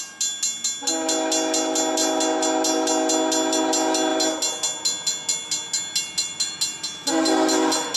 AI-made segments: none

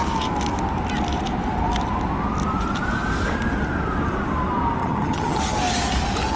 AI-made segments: 4.8-5.4 (vocoder, HiFi-GAN)

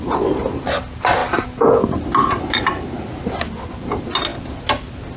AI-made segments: none

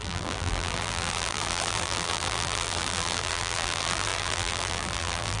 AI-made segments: 0.0-5.4 (vocoder, BigVGAN v2)

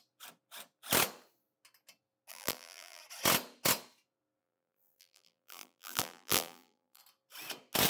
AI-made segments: 2.3-3.0 (vocoder, BigVGAN v2); 4.4-7.0

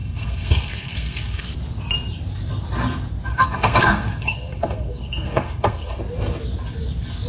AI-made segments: 0.0-1.5 (codec, SNAC); 3.3-6.0